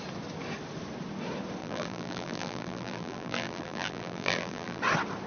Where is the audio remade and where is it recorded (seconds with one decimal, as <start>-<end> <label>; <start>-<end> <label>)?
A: 0.0-1.6 recorded; 1.6-4.8 remade; 4.8-5.3 recorded